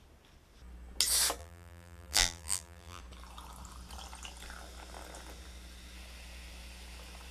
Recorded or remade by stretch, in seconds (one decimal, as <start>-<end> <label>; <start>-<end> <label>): 0.0-1.4 recorded; 1.4-3.0 remade; 3.0-7.3 recorded